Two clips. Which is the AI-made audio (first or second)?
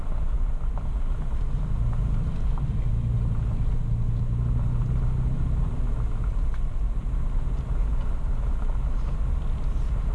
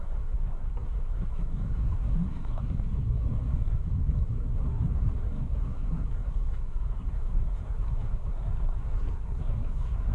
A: second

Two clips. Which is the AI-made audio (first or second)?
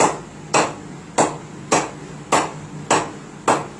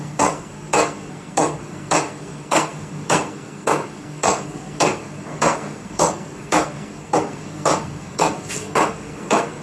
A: second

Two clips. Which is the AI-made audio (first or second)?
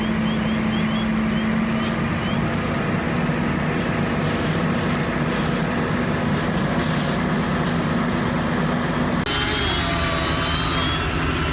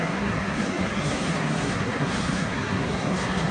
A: second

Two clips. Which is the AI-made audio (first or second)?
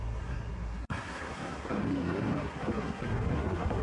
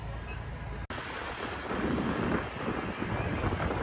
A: first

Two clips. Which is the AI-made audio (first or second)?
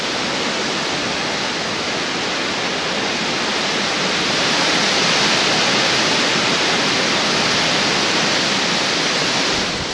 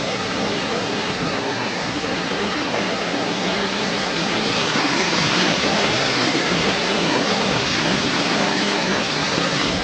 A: second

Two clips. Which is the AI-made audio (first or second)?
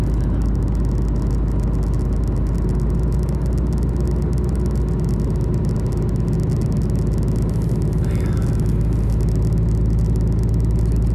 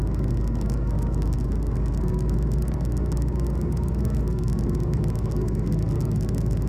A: second